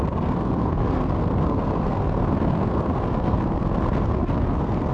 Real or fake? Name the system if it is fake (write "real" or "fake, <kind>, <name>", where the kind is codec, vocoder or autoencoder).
fake, codec, SNAC